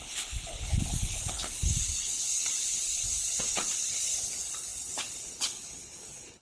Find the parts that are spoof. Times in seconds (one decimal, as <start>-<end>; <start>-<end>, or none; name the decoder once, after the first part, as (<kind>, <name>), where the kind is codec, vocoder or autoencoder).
0.0-6.4 (codec, HILCodec)